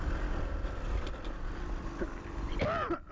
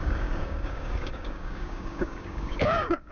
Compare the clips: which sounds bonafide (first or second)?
first